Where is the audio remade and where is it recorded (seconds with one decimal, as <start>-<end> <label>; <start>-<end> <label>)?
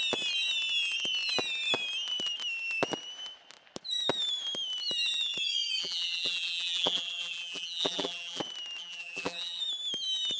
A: 0.0-5.8 recorded; 5.8-8.4 remade; 8.4-8.8 recorded; 8.8-9.6 remade; 9.6-10.4 recorded